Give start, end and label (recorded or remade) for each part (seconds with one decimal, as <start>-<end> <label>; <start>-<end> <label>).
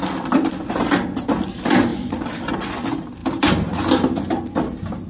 0.0-5.1 recorded